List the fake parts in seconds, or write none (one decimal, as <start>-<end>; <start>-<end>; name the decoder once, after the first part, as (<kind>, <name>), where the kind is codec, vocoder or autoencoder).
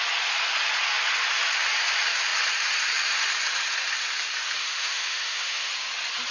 4.6-5.7 (autoencoder, DAC-VAE)